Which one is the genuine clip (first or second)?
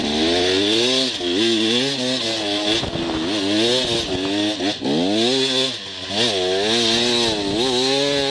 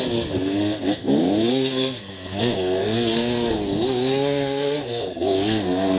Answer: first